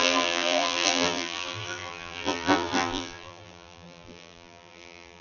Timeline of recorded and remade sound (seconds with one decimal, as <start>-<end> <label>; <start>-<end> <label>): 0.0-5.2 remade